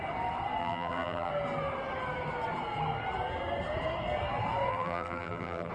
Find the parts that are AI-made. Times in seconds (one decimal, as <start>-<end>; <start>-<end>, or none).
0.6-1.3; 4.7-5.7